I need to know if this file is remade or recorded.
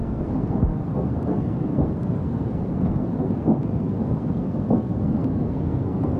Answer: remade